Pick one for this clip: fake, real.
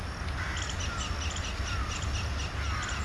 real